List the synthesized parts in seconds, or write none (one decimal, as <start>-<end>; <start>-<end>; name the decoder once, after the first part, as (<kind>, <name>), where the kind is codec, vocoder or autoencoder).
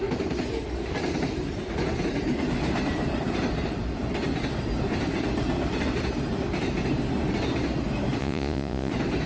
8.2-8.9 (vocoder, Vocos)